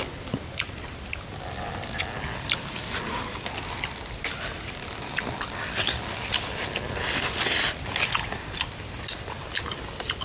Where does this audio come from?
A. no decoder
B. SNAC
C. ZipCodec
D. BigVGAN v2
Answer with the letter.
A